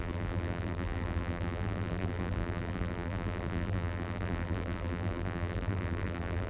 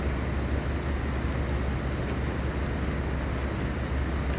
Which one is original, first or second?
second